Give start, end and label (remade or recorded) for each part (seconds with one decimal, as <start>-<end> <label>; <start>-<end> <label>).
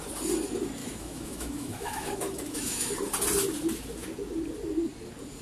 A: 0.0-0.8 recorded; 0.8-2.9 remade; 2.9-5.4 recorded